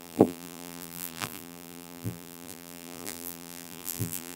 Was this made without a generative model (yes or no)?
no